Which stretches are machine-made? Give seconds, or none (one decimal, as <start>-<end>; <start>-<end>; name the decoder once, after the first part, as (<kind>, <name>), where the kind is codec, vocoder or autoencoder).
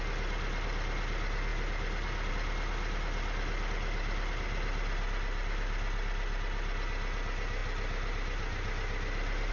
none